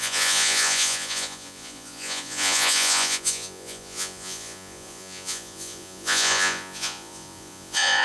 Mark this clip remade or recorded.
remade